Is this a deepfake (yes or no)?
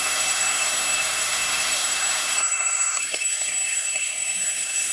yes